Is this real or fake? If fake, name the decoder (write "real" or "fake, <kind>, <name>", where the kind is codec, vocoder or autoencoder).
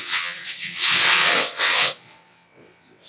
fake, vocoder, WaveNeXt